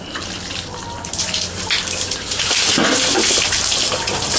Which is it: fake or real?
real